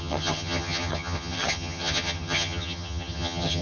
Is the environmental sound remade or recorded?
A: remade